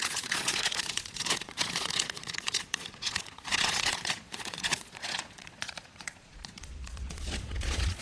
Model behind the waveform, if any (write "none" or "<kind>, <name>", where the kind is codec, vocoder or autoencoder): vocoder, Vocos